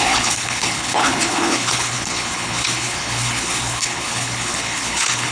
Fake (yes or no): yes